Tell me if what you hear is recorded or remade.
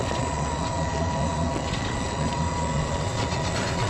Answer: remade